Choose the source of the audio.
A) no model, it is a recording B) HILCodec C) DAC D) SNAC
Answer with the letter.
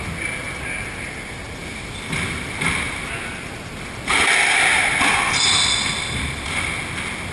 A